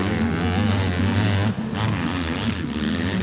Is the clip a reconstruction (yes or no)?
no